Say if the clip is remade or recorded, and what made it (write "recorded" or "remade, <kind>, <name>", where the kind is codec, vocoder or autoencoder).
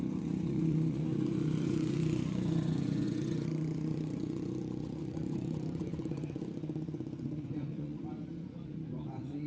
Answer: remade, vocoder, Vocos